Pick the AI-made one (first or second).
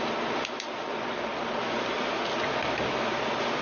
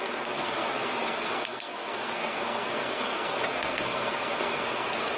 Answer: second